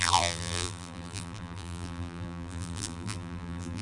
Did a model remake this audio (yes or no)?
yes